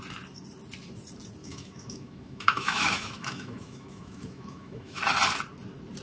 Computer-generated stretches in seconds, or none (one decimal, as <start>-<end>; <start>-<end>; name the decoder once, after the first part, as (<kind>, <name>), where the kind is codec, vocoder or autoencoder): 1.4-5.0 (autoencoder, DAC-VAE)